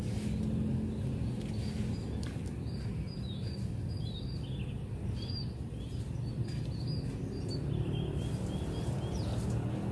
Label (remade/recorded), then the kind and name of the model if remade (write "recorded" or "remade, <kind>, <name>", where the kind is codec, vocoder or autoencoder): recorded